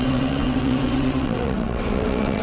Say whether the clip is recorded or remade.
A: remade